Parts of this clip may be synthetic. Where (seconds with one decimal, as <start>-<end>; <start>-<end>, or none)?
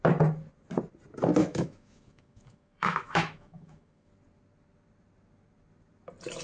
1.4-4.1